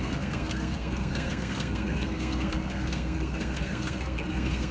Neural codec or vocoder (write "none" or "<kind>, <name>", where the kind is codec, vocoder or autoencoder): codec, SNAC